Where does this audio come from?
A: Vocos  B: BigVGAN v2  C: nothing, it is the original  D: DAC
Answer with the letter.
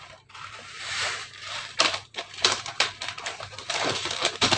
B